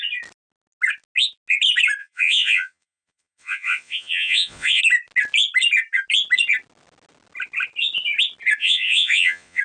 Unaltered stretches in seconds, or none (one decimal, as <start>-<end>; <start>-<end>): 0.0-2.0; 4.8-8.6